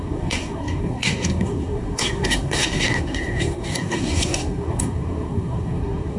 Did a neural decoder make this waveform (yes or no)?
yes